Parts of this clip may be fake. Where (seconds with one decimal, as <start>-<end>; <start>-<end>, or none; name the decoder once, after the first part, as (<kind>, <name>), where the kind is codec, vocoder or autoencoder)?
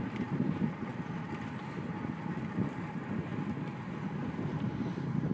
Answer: 0.0-0.9 (vocoder, BigVGAN v2); 2.7-3.3; 4.3-5.3